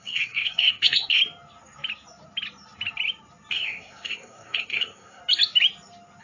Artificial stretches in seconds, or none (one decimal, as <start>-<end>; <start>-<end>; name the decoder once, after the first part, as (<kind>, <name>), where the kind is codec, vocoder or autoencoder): 0.0-1.2 (codec, SNAC); 3.5-5.2